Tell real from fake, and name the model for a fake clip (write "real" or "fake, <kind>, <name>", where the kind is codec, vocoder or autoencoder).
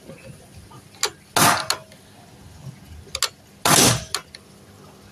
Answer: real